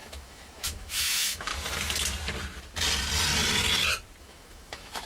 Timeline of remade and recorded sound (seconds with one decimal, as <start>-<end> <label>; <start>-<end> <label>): 0.0-1.5 remade; 1.5-4.2 recorded; 4.2-5.1 remade